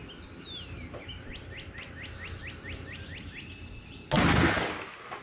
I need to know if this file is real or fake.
real